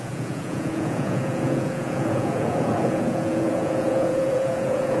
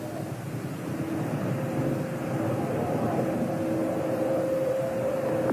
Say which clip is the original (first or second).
second